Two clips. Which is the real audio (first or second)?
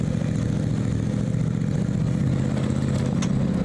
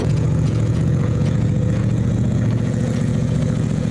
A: first